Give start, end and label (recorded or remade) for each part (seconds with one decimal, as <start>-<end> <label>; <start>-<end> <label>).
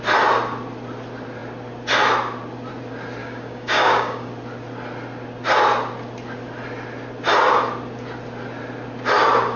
0.0-3.2 recorded; 3.2-4.3 remade; 4.3-9.6 recorded